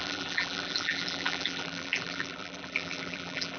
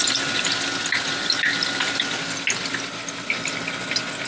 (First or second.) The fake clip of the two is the first